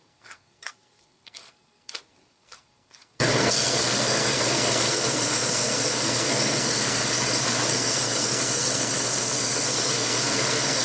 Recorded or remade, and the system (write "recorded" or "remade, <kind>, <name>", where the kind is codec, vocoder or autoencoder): remade, codec, SNAC